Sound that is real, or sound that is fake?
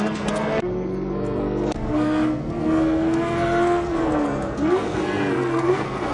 fake